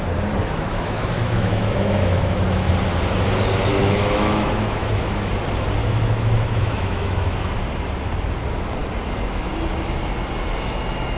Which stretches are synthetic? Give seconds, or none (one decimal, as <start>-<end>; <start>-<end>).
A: 0.7-2.7; 3.8-5.3; 5.8-7.5